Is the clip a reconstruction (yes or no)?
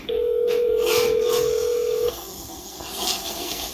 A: yes